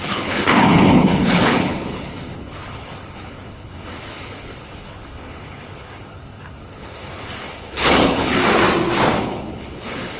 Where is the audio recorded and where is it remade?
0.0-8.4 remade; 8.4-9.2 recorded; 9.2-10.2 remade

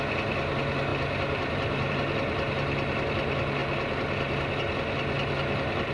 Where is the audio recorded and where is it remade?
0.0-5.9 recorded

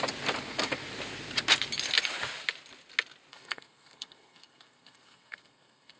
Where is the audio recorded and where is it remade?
0.0-3.3 recorded; 3.3-6.0 remade

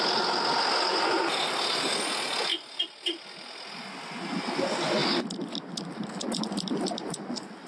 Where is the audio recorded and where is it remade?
0.0-7.7 recorded

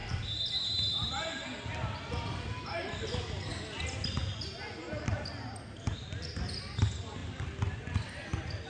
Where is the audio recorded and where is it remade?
0.0-1.1 remade; 1.1-7.2 recorded; 7.2-8.7 remade